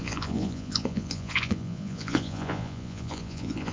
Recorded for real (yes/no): no